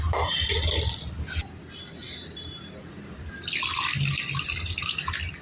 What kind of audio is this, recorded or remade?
recorded